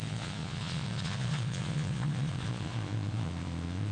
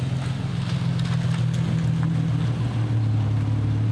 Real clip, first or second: second